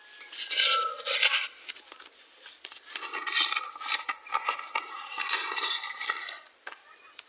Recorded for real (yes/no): yes